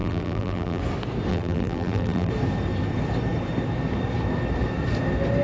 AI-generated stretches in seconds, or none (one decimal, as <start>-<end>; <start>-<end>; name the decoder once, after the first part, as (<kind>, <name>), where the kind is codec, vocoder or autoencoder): 0.0-0.8 (vocoder, BigVGAN v2); 1.3-2.3